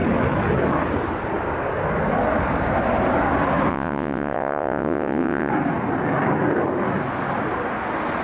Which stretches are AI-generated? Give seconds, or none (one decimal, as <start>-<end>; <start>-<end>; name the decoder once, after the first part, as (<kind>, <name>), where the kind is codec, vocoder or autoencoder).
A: 3.7-5.5 (vocoder, WaveNeXt)